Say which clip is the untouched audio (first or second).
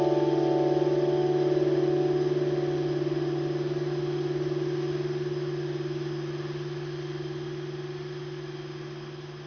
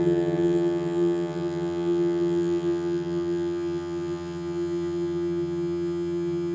first